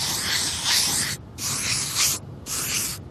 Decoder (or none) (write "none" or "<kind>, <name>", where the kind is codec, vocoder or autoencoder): vocoder, BigVGAN v2